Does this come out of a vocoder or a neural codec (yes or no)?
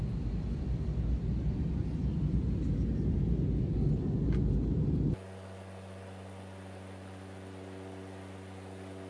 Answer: no